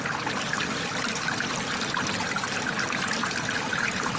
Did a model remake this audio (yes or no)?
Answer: no